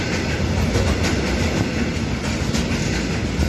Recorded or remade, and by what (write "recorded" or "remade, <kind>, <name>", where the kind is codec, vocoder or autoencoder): recorded